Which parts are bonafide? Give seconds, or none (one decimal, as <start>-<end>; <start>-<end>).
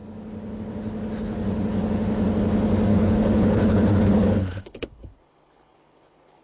0.0-2.9